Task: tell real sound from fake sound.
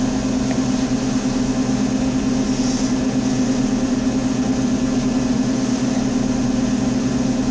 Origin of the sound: real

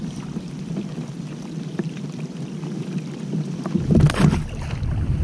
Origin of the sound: fake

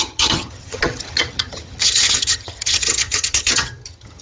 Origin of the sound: fake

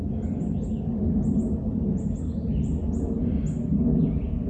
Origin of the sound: real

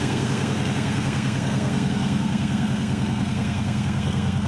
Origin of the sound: fake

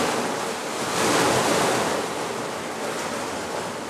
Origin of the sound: real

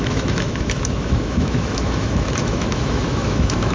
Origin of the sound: fake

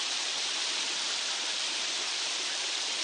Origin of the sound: fake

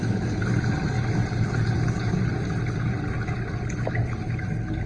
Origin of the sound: real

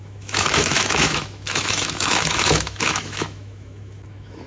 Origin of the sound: fake